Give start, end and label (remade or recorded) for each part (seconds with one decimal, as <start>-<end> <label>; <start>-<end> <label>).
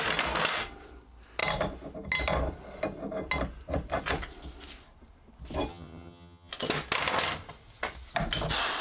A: 0.0-5.7 recorded; 5.7-6.5 remade; 6.5-8.8 recorded